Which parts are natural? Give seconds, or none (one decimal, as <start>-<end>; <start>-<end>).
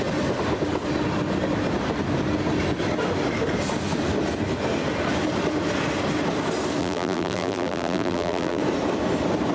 0.0-6.8; 8.6-9.5